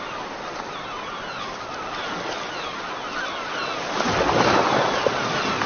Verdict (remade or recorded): recorded